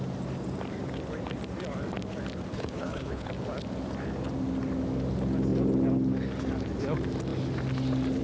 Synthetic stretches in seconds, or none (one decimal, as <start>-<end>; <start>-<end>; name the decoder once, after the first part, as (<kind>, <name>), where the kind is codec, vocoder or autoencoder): 2.5-3.3 (codec, HILCodec)